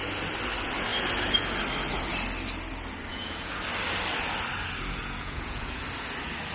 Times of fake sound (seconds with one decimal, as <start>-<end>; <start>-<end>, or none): 3.1-3.6; 5.0-5.8